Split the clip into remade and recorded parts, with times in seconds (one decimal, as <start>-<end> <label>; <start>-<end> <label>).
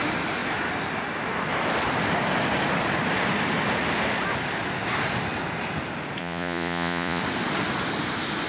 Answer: 0.0-6.2 recorded; 6.2-7.2 remade; 7.2-8.5 recorded